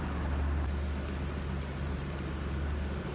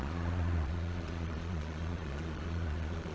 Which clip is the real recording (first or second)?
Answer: first